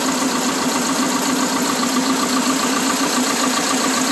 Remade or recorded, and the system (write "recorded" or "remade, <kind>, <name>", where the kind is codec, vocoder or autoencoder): recorded